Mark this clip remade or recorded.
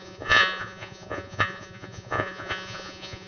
remade